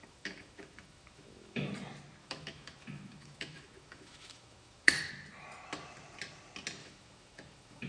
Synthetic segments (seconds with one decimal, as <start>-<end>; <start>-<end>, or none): 0.0-1.7; 2.2-5.1; 6.8-7.9